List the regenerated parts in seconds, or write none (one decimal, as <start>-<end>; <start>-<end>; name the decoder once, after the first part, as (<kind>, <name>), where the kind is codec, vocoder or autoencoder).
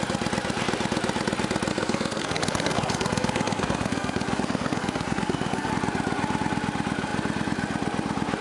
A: 1.7-5.7 (codec, SNAC)